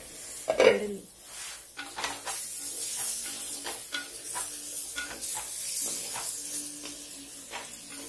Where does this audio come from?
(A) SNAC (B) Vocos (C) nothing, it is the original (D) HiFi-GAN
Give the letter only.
C